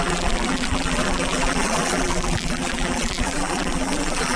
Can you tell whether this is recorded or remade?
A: remade